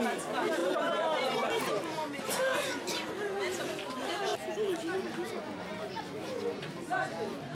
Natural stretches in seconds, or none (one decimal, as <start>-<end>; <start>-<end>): 0.0-2.5; 3.6-7.5